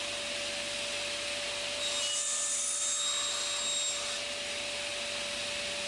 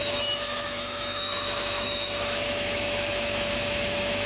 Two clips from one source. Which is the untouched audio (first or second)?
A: first